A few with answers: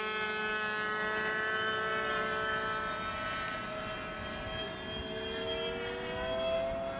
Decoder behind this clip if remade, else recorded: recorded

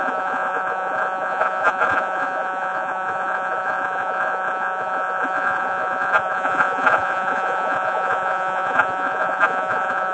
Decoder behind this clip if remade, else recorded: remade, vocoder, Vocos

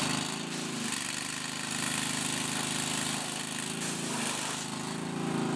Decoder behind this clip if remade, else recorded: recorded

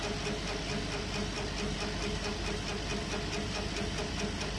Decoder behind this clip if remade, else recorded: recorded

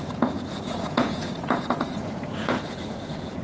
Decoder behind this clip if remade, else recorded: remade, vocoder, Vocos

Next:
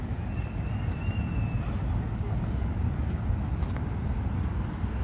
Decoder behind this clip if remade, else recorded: recorded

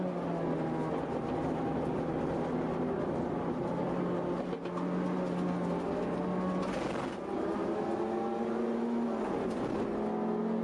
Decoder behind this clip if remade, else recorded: recorded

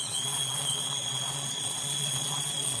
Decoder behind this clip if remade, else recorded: remade, vocoder, Vocos